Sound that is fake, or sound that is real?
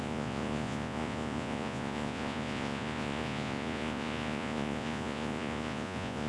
fake